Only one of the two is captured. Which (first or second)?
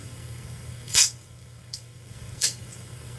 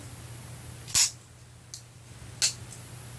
second